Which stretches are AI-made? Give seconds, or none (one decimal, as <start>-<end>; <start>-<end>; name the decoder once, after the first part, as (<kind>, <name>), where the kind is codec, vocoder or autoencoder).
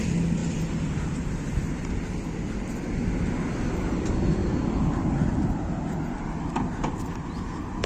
none